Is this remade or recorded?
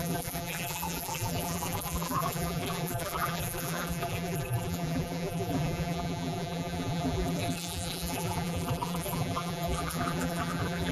remade